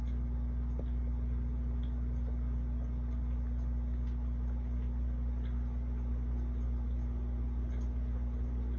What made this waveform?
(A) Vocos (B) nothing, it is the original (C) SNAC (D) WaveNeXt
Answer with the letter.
B